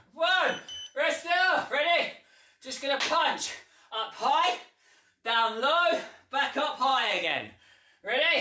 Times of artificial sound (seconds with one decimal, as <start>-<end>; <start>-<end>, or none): 6.9-7.9